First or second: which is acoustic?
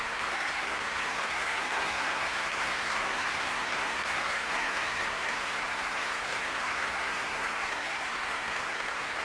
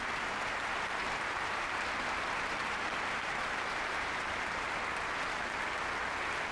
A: second